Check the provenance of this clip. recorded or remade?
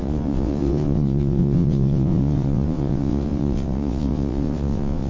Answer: remade